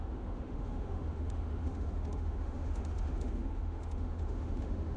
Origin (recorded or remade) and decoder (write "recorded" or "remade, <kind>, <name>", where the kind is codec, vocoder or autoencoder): remade, autoencoder, DAC-VAE